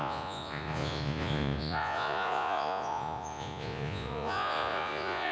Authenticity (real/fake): fake